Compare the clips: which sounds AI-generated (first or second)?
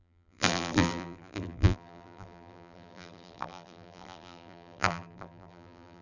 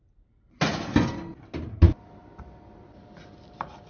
first